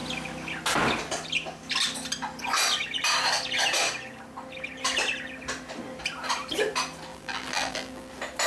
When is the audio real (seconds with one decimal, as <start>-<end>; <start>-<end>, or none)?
0.0-7.1; 8.1-8.5

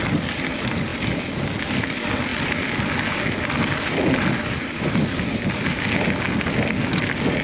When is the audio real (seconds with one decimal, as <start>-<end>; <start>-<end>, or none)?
0.0-7.4